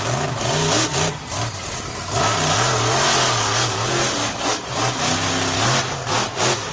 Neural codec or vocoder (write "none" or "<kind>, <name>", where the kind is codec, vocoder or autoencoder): none